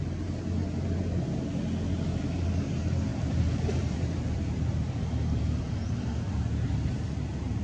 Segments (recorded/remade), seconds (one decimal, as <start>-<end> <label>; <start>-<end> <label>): 0.0-3.1 recorded; 3.1-6.2 remade; 6.2-7.6 recorded